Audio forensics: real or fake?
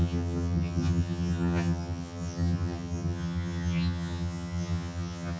fake